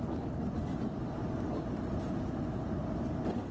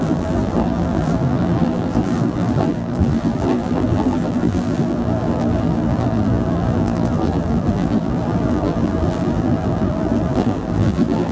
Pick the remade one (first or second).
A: second